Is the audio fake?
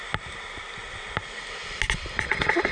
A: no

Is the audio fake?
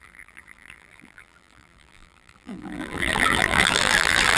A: yes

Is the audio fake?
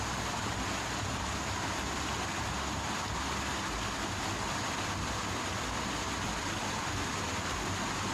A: no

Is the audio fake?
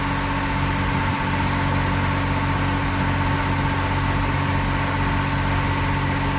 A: no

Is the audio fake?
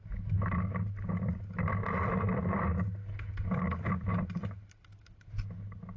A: no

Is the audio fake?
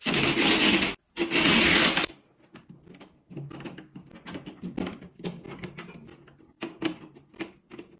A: no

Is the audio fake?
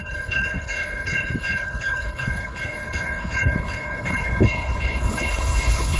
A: yes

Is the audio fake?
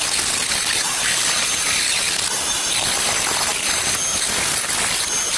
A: no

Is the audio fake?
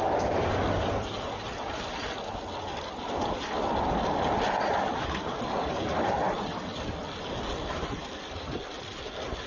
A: no